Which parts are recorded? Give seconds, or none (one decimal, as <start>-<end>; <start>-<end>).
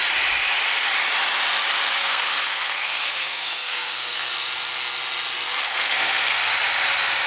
0.0-2.0; 4.3-5.6; 6.5-7.3